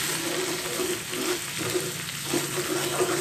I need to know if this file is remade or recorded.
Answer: recorded